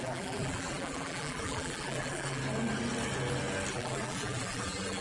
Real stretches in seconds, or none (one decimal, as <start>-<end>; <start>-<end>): 2.4-3.7